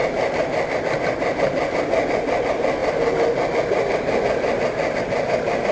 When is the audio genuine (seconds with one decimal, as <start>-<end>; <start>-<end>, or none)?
0.0-5.7